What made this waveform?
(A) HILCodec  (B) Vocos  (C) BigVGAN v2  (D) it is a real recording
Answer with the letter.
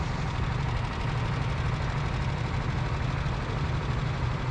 D